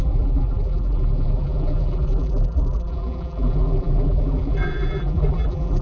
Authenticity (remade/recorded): remade